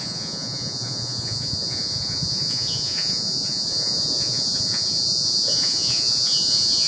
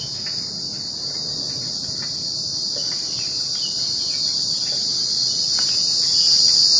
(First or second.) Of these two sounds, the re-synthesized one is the first